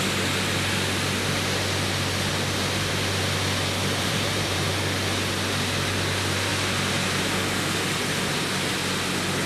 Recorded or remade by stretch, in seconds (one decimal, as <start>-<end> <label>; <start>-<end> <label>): 0.0-2.3 recorded; 2.3-2.9 remade; 2.9-3.8 recorded; 3.8-4.7 remade; 4.7-9.5 recorded